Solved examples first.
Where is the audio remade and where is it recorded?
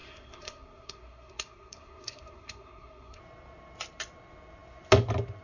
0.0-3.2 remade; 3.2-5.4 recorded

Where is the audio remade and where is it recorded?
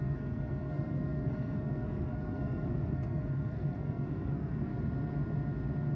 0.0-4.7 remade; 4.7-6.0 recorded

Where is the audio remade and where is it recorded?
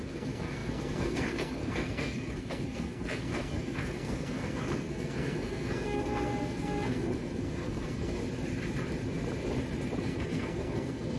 0.0-8.2 remade; 8.2-10.0 recorded; 10.0-11.2 remade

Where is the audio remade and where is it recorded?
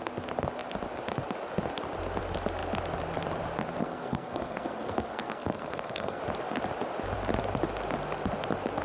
0.0-3.8 recorded; 3.8-6.2 remade; 6.2-8.8 recorded